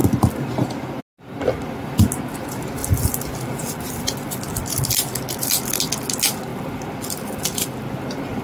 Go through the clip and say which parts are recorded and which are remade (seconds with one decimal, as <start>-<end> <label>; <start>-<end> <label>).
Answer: 0.0-1.0 remade; 1.0-6.5 recorded; 6.5-8.0 remade; 8.0-8.4 recorded